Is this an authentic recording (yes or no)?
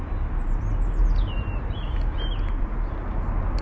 yes